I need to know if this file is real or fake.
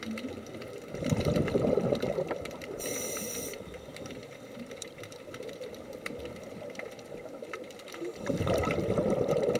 fake